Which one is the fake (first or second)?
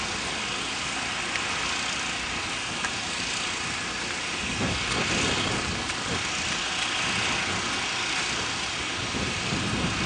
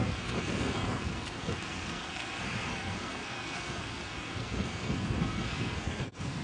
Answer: second